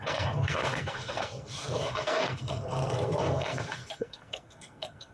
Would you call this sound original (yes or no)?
no